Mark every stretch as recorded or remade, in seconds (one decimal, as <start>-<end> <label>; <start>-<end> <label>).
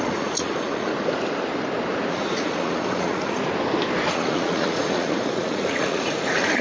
0.0-0.9 remade; 0.9-2.1 recorded; 2.1-3.4 remade; 3.4-4.1 recorded; 4.1-6.6 remade